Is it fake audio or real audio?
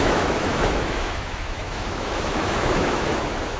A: fake